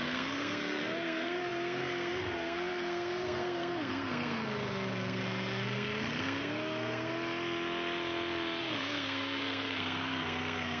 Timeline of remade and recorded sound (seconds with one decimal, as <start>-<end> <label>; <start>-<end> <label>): 0.0-7.1 remade; 7.1-8.6 recorded; 8.6-10.8 remade